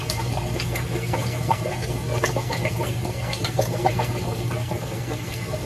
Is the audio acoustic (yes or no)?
no